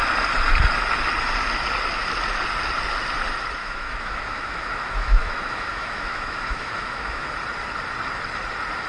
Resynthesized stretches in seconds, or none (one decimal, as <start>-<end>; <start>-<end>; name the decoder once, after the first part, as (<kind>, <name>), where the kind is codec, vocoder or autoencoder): 3.6-7.3 (autoencoder, DAC-VAE)